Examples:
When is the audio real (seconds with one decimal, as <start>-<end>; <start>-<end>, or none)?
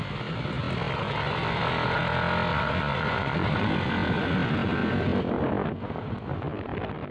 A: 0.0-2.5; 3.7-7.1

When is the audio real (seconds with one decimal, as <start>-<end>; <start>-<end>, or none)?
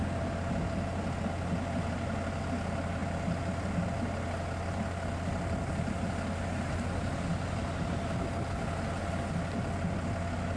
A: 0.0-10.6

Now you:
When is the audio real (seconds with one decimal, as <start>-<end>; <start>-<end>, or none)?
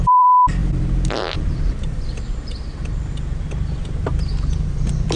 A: none